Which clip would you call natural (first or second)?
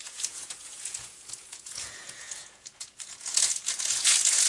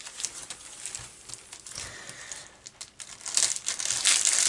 second